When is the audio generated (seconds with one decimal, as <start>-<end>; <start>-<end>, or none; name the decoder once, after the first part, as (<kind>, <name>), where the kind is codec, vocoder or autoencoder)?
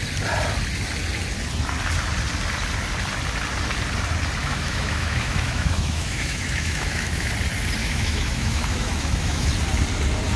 4.4-7.3 (autoencoder, DAC-VAE); 7.8-9.5